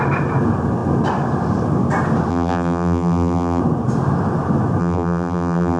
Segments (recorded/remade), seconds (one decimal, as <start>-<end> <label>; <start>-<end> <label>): 0.0-2.3 recorded; 2.3-3.6 remade; 3.6-4.8 recorded; 4.8-5.8 remade